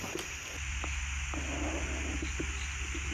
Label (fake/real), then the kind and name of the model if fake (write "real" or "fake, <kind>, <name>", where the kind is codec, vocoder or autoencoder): real